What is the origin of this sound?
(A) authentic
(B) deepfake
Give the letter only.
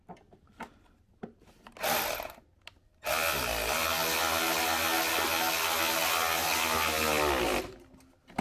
A